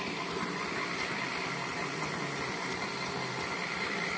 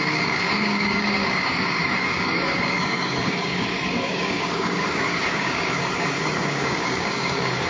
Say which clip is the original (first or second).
first